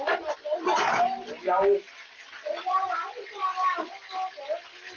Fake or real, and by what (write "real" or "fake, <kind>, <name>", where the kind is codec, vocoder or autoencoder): real